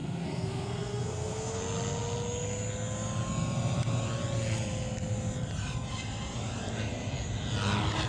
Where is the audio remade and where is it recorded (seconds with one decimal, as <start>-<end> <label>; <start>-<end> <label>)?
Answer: 0.0-1.6 remade; 1.6-8.1 recorded